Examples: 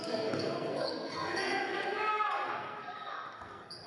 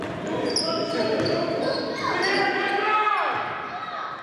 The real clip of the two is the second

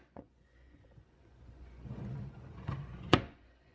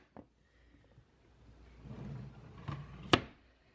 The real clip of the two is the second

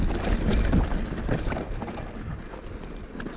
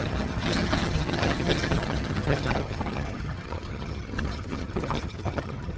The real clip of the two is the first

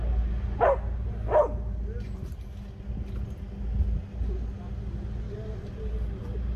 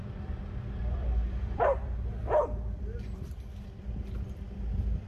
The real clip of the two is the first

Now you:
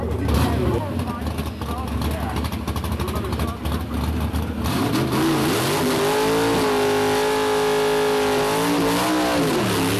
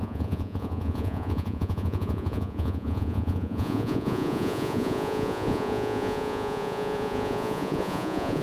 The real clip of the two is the first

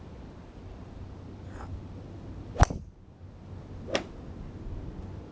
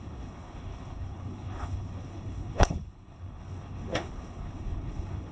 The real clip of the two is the first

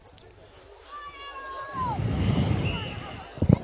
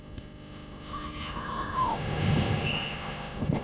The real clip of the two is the first